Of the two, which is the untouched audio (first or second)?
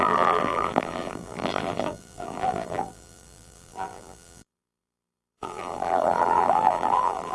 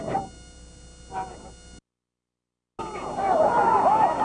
second